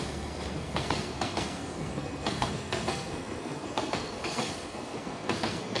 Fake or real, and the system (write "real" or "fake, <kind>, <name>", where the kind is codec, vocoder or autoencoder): fake, codec, SNAC